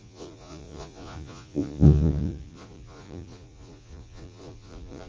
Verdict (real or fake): fake